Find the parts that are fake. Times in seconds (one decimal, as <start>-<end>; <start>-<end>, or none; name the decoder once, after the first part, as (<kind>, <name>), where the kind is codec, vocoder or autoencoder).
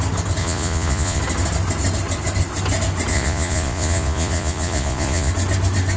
0.4-1.2 (vocoder, Vocos); 3.1-5.3